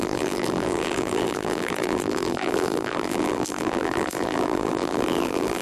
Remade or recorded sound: remade